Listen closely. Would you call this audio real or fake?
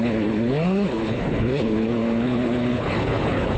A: fake